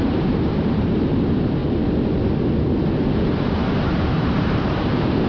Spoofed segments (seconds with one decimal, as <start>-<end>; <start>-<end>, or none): 0.0-1.6; 3.8-5.3